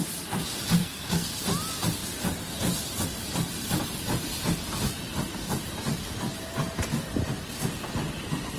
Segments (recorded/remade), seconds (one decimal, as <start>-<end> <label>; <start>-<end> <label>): 0.0-0.8 recorded; 0.8-1.4 remade; 1.4-8.6 recorded